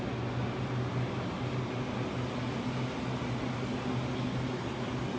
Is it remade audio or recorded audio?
recorded